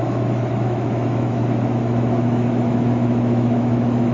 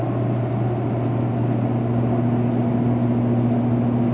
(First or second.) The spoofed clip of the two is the first